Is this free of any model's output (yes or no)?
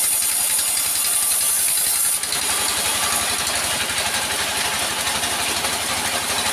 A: yes